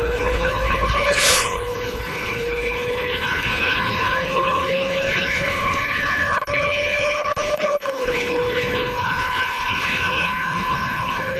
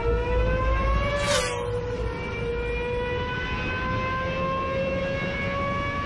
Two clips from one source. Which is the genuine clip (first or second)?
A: second